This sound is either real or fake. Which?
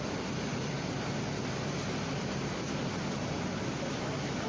real